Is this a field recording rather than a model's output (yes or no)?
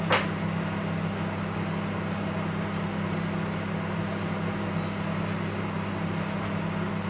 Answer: yes